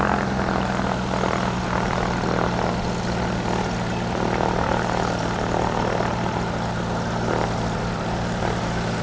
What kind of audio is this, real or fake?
real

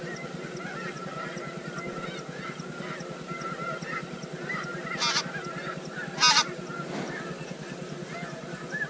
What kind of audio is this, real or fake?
real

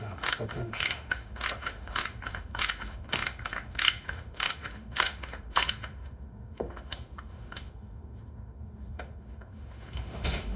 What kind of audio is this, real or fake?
fake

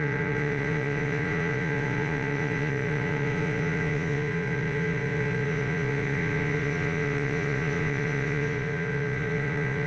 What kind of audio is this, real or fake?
fake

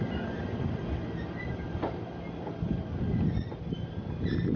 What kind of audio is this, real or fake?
real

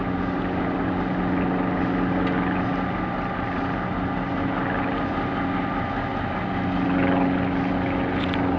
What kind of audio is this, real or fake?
real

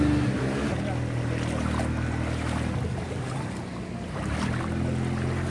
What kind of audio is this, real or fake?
real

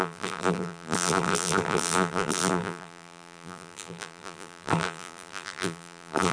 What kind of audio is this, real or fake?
fake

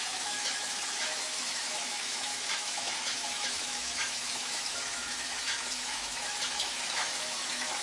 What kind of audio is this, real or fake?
fake